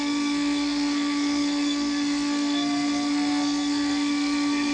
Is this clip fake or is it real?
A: fake